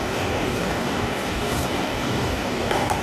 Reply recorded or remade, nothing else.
remade